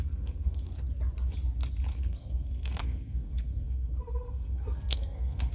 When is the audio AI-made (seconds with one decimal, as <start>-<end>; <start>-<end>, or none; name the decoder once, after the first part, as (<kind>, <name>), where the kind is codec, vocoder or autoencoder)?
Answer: 0.0-0.7 (codec, SNAC); 1.9-5.5